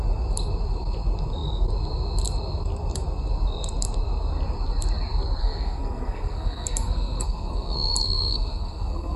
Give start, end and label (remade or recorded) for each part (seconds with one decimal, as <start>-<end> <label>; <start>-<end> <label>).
0.0-5.4 recorded; 5.4-9.2 remade